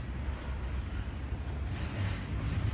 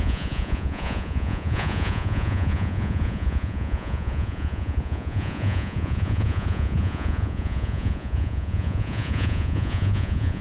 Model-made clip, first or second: second